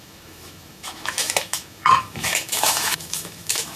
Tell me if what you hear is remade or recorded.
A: remade